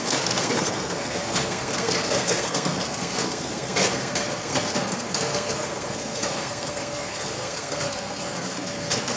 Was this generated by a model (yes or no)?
yes